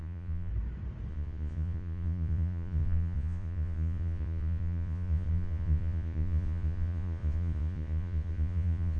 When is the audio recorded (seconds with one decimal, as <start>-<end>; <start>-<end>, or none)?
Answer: 0.5-1.1